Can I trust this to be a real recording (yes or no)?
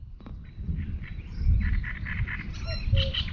yes